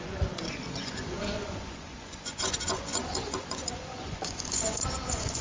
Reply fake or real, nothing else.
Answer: fake